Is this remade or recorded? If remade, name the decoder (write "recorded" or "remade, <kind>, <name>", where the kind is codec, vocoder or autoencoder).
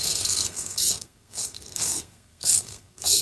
remade, codec, SNAC